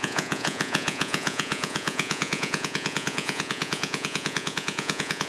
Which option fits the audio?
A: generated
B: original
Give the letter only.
A